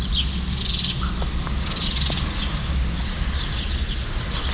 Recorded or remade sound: recorded